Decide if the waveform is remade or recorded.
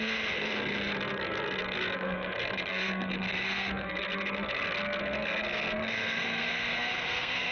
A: remade